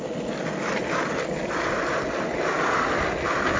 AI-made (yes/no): no